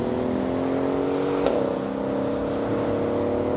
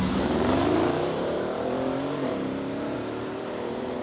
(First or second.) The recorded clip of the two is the first